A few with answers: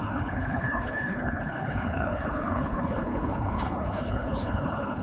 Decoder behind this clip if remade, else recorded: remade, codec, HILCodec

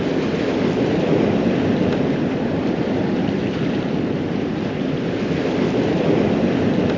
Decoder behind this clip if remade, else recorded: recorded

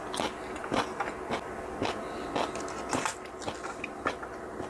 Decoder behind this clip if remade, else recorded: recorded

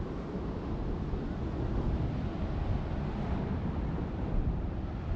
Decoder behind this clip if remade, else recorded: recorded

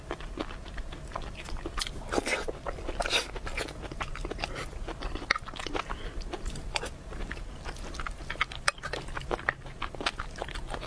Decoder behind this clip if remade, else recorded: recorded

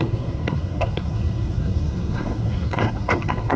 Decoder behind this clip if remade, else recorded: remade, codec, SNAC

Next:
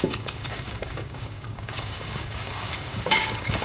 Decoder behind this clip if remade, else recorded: remade, codec, DAC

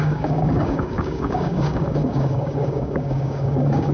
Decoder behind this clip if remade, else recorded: remade, codec, DAC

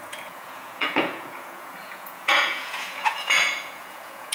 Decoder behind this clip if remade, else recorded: remade, vocoder, Vocos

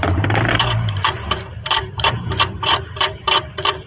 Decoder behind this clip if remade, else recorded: remade, vocoder, BigVGAN v2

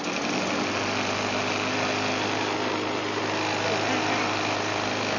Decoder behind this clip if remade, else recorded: recorded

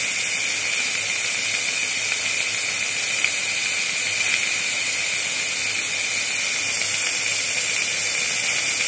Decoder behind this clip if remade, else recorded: recorded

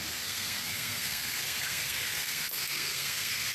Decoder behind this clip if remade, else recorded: remade, codec, SNAC